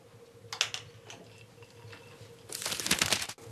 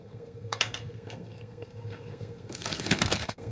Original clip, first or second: first